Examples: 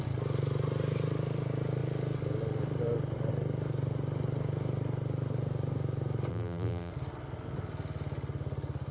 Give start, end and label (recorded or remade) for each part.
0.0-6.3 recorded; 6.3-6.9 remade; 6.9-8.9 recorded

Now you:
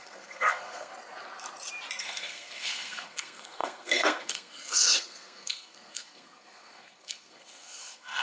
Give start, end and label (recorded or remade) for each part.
0.0-0.9 remade; 0.9-2.0 recorded; 2.0-8.2 remade

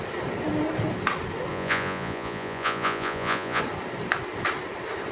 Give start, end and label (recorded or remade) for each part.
0.0-1.5 recorded; 1.5-3.6 remade; 3.6-5.1 recorded

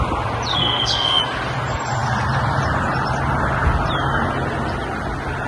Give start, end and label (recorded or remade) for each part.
0.0-0.5 recorded; 0.5-1.2 remade; 1.2-5.5 recorded

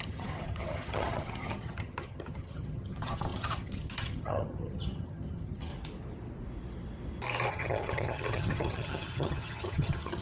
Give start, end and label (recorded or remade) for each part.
0.0-5.7 remade; 5.7-7.5 recorded; 7.5-10.2 remade